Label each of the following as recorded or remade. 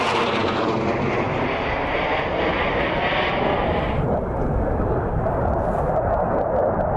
recorded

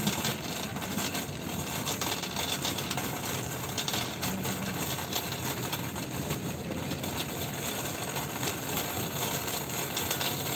recorded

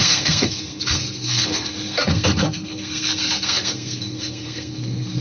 remade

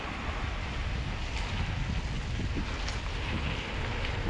recorded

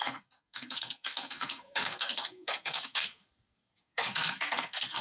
remade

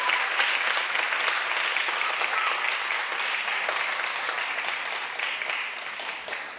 recorded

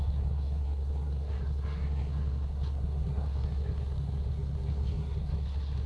remade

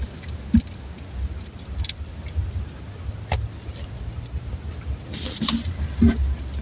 recorded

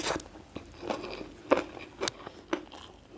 recorded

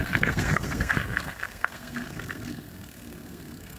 remade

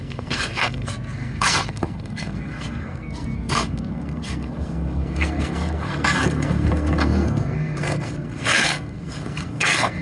remade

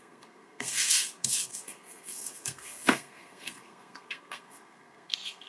remade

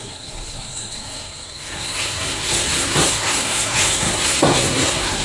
remade